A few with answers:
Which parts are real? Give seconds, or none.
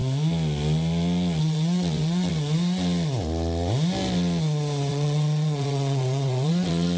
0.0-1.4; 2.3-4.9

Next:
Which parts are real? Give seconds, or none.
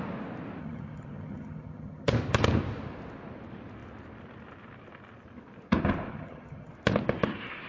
0.0-0.6; 2.1-6.1; 6.7-7.7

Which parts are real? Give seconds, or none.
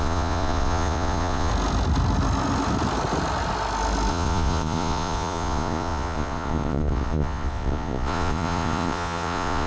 1.5-4.1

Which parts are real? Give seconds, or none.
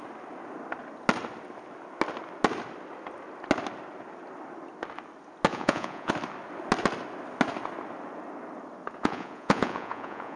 0.0-5.5; 6.1-9.0